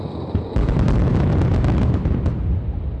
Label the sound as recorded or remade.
recorded